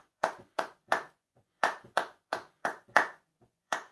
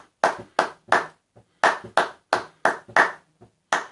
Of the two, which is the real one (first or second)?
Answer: second